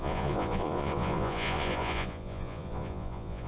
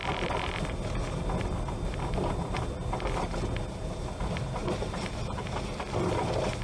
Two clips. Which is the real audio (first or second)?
second